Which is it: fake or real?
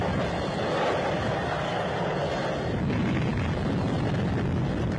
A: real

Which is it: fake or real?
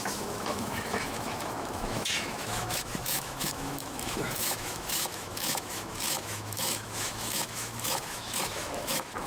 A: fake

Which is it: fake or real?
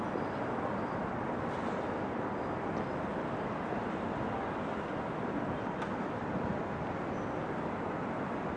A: real